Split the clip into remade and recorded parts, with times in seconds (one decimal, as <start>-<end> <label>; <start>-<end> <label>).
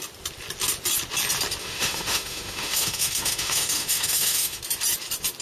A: 0.0-1.6 recorded; 1.6-4.6 remade; 4.6-5.4 recorded